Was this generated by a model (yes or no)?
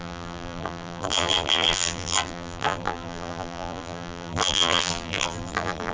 yes